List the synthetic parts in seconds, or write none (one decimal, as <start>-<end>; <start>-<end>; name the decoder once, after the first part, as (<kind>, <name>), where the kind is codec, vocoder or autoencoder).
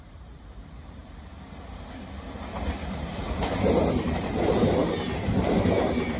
0.0-1.0 (vocoder, BigVGAN v2); 4.0-4.8